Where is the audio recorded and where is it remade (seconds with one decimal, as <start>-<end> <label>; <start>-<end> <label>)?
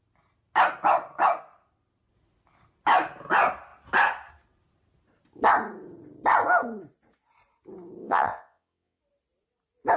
0.0-8.0 recorded; 8.0-9.0 remade; 9.0-10.0 recorded